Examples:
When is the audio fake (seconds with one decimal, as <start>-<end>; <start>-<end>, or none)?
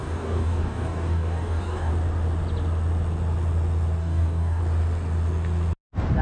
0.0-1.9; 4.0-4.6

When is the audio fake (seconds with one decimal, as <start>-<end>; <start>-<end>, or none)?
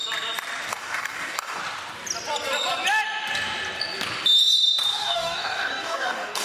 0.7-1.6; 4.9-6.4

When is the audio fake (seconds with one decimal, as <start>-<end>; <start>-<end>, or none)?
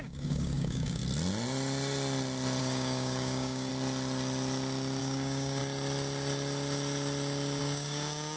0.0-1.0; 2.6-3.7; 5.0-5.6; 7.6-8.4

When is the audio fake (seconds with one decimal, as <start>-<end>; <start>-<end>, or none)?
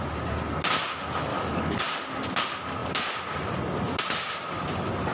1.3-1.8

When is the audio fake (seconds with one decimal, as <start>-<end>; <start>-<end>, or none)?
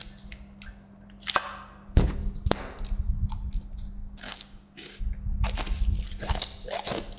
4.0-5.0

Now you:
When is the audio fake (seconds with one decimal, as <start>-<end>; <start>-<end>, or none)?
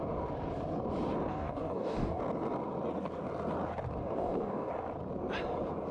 1.3-2.2; 4.0-4.7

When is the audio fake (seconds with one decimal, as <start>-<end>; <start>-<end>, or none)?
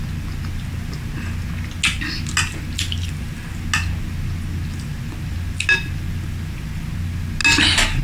none